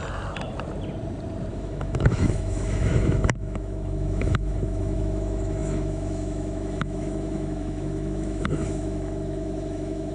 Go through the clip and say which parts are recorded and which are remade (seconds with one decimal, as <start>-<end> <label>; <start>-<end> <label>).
0.0-1.5 recorded; 1.5-10.1 remade